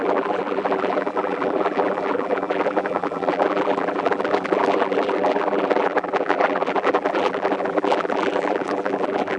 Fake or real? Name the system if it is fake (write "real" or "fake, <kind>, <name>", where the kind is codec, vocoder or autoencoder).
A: fake, vocoder, BigVGAN v2